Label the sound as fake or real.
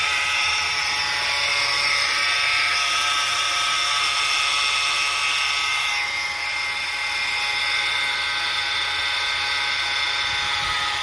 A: real